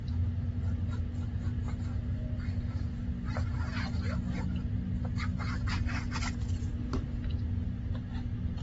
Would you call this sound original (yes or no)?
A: yes